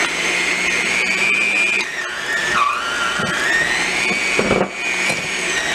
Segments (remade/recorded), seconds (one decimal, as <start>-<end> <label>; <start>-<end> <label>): 0.0-5.7 recorded